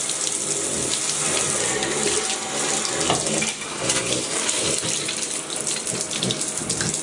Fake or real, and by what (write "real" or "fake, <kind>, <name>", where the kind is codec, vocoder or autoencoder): real